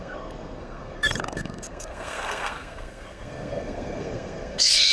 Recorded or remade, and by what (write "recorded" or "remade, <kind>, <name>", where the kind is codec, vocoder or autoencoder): remade, codec, SNAC